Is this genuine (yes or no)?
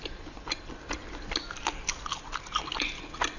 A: yes